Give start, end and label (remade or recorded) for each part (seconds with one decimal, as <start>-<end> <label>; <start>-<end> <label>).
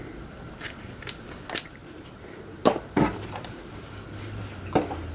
0.0-1.8 recorded; 1.8-3.9 remade; 3.9-5.1 recorded